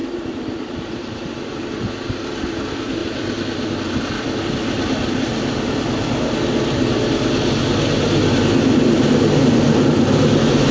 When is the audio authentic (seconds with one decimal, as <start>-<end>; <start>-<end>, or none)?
0.0-3.0; 4.4-10.7